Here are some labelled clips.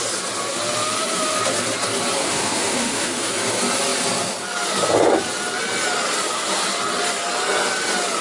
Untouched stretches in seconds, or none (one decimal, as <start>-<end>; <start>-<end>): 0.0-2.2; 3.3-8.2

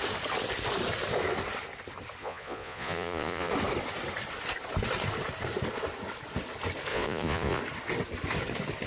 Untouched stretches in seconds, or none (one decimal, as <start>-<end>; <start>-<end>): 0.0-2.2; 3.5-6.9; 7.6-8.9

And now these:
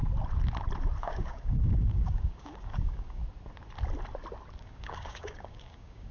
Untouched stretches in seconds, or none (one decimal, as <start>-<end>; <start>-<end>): 0.0-1.0; 3.2-4.6